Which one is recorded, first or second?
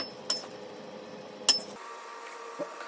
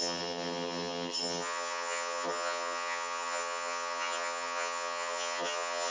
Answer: first